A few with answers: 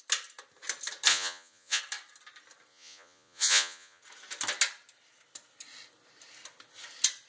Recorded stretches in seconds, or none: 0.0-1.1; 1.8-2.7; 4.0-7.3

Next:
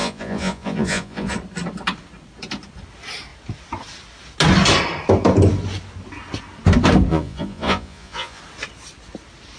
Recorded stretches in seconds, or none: 1.3-7.1; 8.4-9.6